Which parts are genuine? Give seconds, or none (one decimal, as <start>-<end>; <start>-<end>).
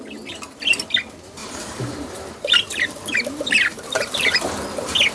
0.0-1.4; 4.5-5.1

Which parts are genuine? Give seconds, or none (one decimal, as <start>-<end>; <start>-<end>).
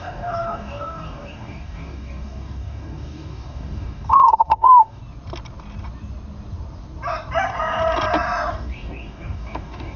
5.0-8.5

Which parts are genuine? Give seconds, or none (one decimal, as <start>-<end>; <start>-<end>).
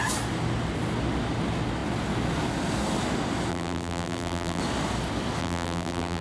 0.0-3.5; 4.6-5.4